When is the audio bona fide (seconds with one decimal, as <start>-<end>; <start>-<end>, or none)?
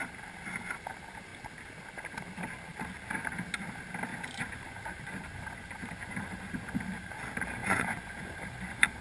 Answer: 0.0-4.1; 6.7-7.6